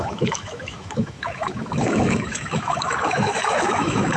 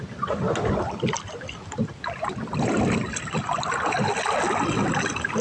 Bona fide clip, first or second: second